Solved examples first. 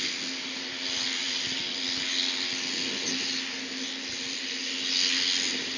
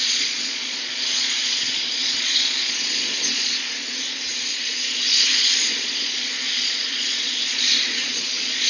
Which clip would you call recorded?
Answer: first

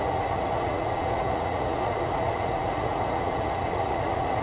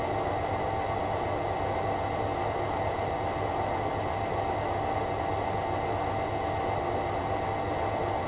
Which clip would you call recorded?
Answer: second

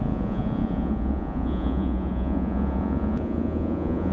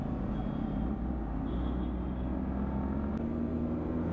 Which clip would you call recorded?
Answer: second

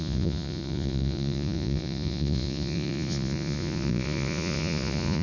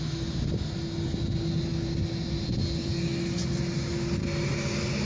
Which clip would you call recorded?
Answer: second